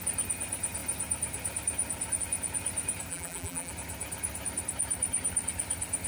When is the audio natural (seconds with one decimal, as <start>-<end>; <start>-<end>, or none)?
0.0-3.1; 3.7-6.1